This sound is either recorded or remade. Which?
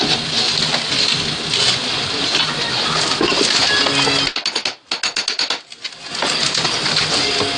recorded